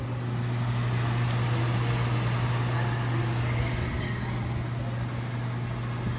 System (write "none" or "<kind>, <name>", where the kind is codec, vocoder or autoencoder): none